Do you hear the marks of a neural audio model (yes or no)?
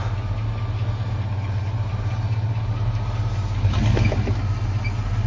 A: no